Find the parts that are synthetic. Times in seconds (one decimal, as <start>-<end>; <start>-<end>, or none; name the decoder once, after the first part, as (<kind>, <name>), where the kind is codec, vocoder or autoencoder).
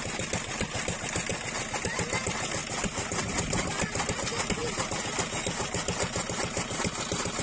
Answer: none